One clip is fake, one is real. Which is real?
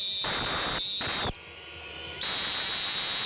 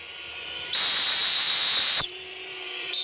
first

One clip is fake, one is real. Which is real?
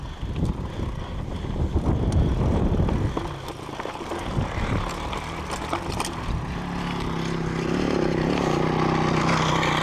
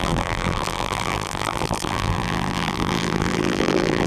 first